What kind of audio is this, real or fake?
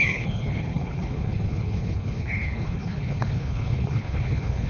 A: fake